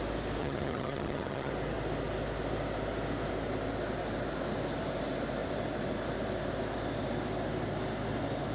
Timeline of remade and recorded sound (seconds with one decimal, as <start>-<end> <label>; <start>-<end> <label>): 0.0-0.4 recorded; 0.4-1.5 remade; 1.5-8.5 recorded